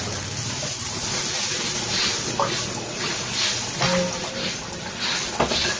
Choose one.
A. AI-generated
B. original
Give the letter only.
B